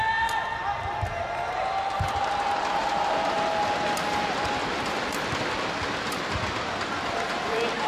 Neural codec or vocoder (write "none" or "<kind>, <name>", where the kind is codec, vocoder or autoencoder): none